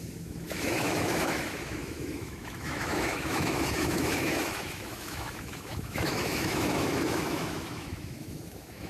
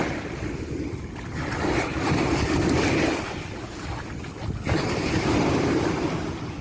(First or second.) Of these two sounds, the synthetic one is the first